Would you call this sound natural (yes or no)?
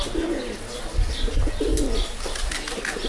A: yes